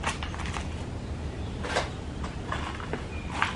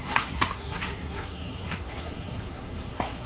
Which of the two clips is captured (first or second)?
first